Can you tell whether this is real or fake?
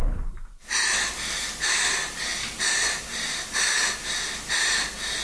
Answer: real